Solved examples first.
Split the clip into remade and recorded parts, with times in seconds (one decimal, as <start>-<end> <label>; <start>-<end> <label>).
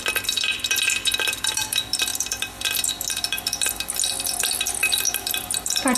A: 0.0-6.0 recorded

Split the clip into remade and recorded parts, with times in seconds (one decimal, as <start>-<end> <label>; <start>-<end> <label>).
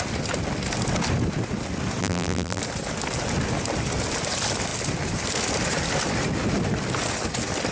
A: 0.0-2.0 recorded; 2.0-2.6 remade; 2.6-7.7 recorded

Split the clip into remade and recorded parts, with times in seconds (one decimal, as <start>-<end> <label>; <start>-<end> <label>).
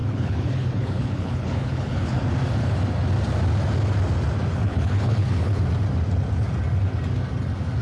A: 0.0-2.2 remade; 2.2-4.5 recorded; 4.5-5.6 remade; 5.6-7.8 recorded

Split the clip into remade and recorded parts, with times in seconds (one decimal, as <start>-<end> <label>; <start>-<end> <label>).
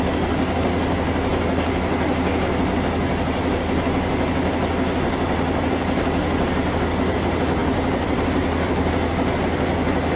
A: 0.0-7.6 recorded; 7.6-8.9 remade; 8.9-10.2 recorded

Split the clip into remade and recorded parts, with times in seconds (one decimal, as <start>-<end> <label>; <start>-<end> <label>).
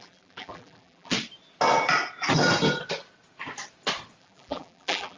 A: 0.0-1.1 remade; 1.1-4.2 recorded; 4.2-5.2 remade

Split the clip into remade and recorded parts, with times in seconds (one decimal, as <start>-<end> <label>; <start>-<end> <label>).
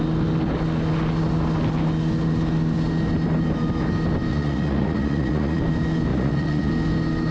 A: 0.0-4.3 recorded; 4.3-5.6 remade; 5.6-6.1 recorded; 6.1-6.7 remade; 6.7-7.3 recorded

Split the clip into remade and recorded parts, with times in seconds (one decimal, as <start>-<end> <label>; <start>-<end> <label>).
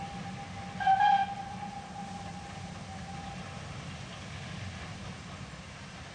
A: 0.0-6.1 recorded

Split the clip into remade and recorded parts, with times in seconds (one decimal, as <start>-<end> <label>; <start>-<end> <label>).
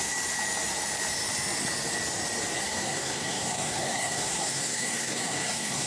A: 0.0-2.6 recorded; 2.6-5.9 remade